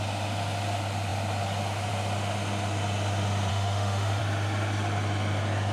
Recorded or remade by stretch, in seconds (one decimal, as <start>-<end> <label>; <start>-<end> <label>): 0.0-3.5 recorded; 3.5-4.2 remade; 4.2-5.7 recorded